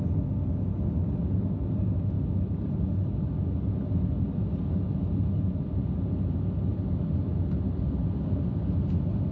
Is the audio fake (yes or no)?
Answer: no